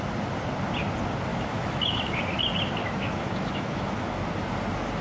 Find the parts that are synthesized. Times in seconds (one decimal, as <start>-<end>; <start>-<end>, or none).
1.3-2.2; 2.8-4.2